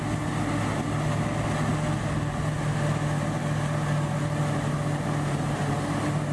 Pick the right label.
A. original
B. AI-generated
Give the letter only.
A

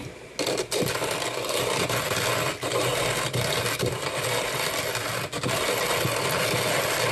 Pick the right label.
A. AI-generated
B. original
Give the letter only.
B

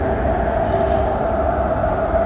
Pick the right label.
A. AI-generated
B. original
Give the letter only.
B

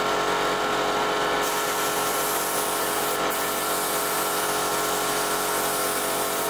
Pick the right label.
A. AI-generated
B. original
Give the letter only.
A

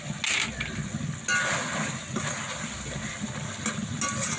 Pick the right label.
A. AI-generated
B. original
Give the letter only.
B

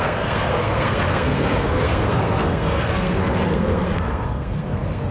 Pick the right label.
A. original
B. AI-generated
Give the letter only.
B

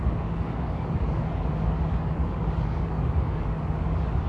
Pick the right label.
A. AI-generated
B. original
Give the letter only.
A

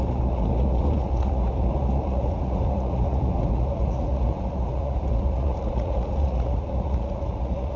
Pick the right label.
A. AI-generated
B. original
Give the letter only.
A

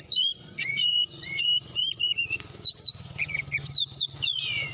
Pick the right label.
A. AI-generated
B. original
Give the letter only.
A